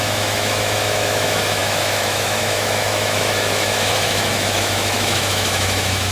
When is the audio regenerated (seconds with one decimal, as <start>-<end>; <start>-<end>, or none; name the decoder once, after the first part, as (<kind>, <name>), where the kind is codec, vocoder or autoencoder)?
0.0-6.1 (autoencoder, DAC-VAE)